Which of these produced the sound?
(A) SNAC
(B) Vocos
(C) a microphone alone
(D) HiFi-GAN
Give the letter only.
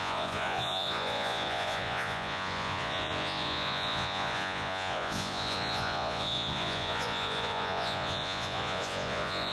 B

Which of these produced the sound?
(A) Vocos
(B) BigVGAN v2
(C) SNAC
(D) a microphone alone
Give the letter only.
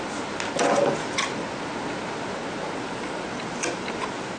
D